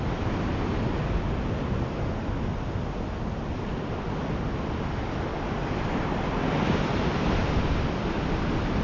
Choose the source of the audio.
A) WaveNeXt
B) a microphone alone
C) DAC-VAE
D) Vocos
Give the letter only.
B